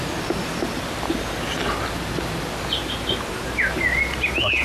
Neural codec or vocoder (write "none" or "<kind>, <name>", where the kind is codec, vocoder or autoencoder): none